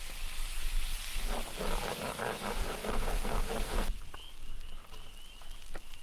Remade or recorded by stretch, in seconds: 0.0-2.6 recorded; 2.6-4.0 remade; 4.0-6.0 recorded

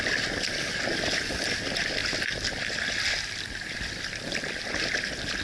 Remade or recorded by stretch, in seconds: 0.0-5.4 recorded

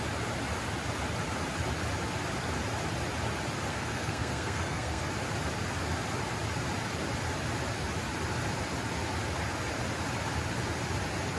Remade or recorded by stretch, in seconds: 0.0-3.7 recorded; 3.7-5.1 remade; 5.1-11.4 recorded

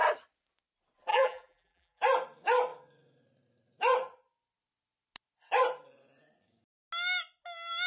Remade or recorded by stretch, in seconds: 0.0-1.1 recorded; 1.1-2.0 remade; 2.0-7.9 recorded

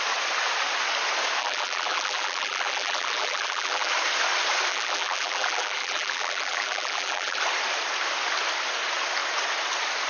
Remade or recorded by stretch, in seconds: 0.0-1.4 recorded; 1.4-3.9 remade; 3.9-4.7 recorded; 4.7-7.4 remade; 7.4-10.1 recorded

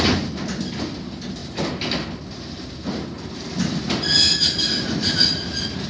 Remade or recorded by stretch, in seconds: 0.0-5.9 recorded